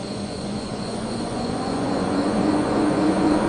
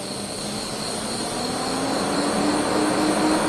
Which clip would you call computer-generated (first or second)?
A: first